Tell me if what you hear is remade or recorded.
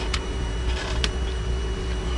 remade